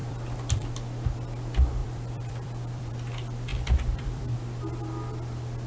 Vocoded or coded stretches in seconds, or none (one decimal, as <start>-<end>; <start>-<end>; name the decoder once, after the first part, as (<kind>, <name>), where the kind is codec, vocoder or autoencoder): 0.0-0.7 (vocoder, BigVGAN v2); 1.8-2.9; 3.5-4.2